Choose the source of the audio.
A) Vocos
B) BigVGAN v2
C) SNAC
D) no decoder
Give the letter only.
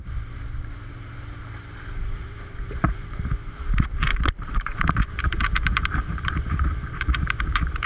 B